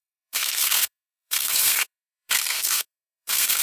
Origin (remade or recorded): remade